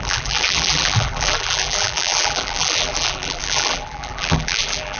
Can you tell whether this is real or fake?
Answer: fake